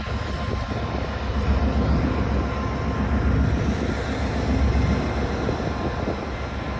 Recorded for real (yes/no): yes